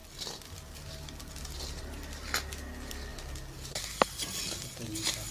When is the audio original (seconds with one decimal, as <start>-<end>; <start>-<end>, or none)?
0.0-5.3